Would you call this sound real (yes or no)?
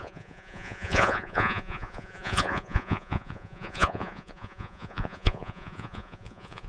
no